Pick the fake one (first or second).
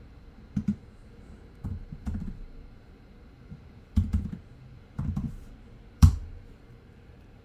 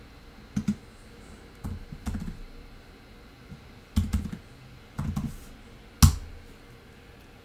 first